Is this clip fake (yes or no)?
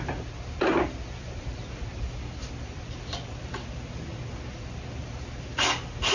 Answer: no